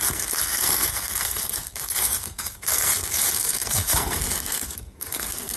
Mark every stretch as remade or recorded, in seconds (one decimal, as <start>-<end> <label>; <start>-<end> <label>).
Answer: 0.0-5.6 remade

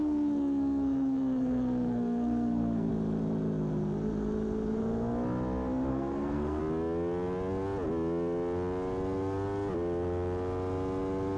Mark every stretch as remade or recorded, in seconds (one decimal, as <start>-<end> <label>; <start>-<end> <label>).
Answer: 0.0-2.9 remade; 2.9-5.9 recorded; 5.9-6.6 remade; 6.6-11.4 recorded